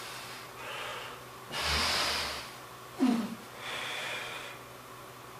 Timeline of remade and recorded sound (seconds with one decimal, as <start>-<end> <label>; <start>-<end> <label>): 0.0-0.9 recorded; 0.9-4.1 remade; 4.1-5.4 recorded